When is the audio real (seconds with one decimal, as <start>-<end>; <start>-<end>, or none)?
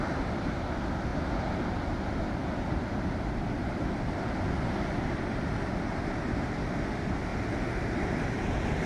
0.0-7.3